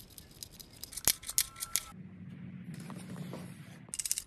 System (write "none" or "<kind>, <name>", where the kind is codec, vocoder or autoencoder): none